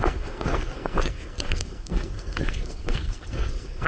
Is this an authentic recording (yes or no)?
no